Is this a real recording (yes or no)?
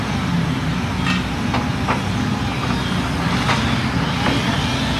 yes